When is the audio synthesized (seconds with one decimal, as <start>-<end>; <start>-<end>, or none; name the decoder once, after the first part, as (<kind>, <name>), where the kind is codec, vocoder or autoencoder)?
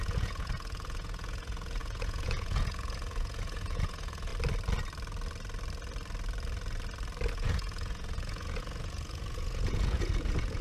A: 0.0-4.3 (vocoder, Vocos); 7.3-10.6